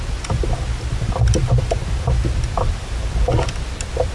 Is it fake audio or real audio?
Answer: real